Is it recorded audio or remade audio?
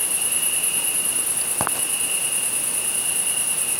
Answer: recorded